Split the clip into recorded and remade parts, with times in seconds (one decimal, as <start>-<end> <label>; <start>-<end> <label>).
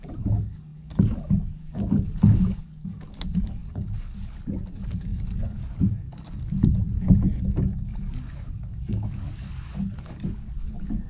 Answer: 0.0-11.1 remade